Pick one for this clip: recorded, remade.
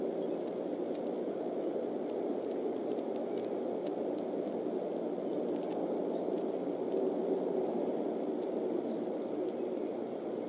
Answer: recorded